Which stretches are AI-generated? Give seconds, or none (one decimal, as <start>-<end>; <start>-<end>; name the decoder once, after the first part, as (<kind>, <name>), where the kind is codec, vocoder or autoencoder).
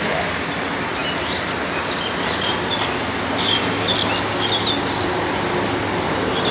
none